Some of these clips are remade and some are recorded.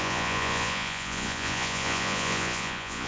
remade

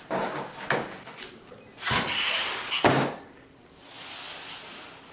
recorded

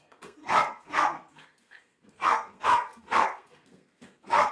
remade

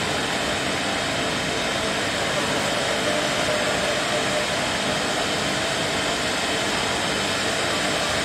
recorded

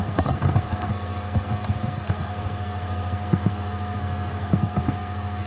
remade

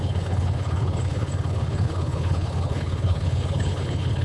remade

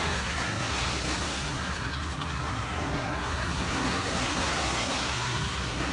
remade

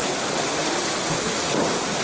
recorded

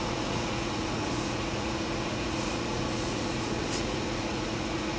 remade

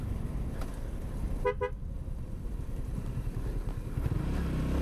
recorded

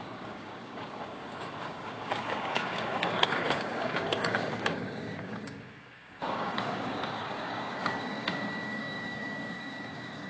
remade